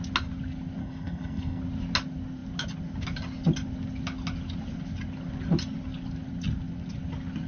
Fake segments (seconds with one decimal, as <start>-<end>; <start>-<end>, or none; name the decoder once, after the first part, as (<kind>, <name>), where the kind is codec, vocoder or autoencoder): 0.8-1.6 (codec, SNAC)